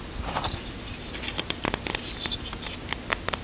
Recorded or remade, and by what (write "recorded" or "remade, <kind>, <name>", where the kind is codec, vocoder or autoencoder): recorded